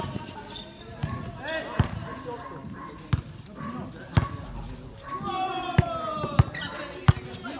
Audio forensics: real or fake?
real